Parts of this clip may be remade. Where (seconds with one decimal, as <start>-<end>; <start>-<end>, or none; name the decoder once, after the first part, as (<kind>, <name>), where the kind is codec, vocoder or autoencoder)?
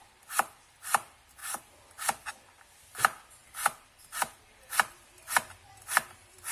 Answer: 0.0-6.5 (vocoder, BigVGAN v2)